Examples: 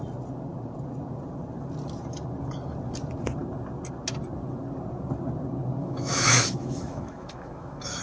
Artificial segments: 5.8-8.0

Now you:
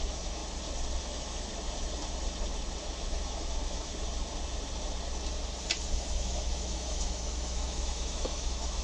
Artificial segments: 0.0-0.4; 1.0-1.5; 2.8-3.9; 5.9-8.8

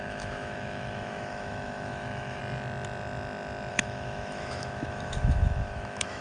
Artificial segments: 0.0-2.4; 3.7-6.2

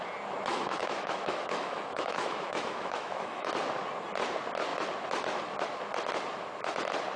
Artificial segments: 0.5-3.5

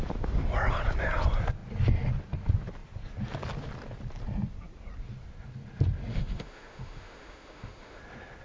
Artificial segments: 6.1-8.0

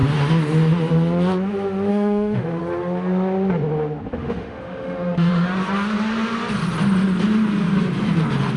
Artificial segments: 1.9-2.6; 4.2-5.3